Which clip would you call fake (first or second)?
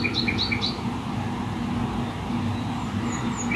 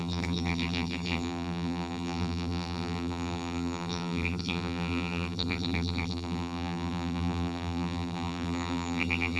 second